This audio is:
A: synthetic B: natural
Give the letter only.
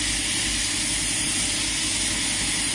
B